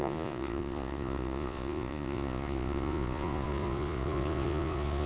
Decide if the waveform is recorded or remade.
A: remade